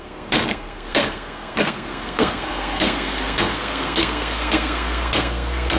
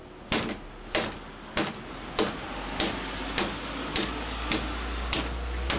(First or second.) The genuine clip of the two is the second